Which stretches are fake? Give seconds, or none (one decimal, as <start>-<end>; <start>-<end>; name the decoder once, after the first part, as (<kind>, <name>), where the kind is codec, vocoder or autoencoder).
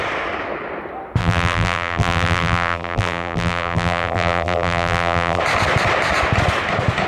1.2-5.4 (vocoder, BigVGAN v2)